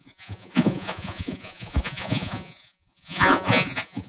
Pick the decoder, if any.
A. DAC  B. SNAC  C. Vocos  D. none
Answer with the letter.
C